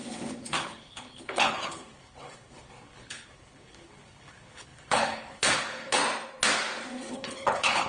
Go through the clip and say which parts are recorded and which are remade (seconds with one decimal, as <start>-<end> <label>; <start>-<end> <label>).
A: 0.0-6.0 remade; 6.0-7.1 recorded; 7.1-7.9 remade